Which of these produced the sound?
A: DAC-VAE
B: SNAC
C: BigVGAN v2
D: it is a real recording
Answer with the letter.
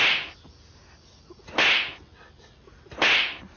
D